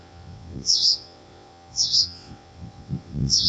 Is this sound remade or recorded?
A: remade